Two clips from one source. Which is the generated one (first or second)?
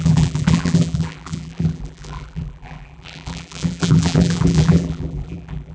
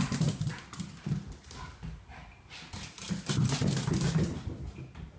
first